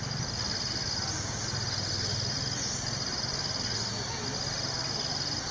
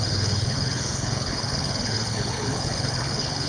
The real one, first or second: first